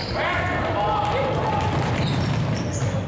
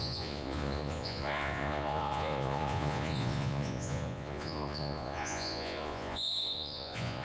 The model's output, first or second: second